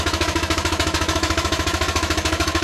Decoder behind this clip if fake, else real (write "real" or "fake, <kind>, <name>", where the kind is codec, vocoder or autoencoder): fake, autoencoder, DAC-VAE